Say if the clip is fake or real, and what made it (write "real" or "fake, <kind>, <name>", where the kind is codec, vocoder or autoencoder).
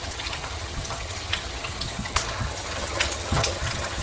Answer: fake, vocoder, HiFi-GAN